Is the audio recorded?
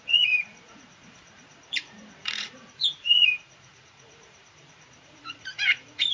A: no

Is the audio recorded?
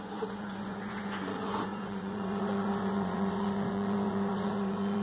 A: no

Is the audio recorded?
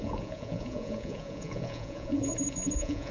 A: no